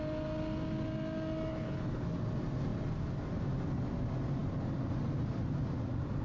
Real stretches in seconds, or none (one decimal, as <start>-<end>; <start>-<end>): 0.0-1.5; 2.0-6.2